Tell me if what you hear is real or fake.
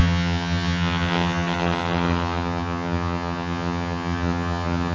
fake